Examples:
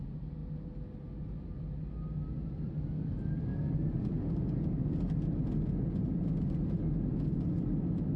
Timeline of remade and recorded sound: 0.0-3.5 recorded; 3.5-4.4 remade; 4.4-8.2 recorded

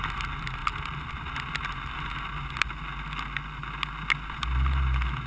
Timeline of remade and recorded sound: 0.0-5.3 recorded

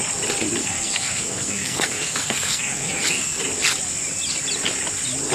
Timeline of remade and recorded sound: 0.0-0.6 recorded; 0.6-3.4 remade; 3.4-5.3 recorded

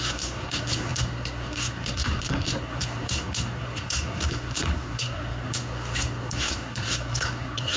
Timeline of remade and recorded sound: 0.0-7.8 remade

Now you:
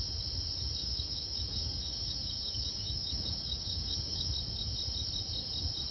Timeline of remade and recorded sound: 0.0-0.8 recorded; 0.8-4.3 remade; 4.3-5.9 recorded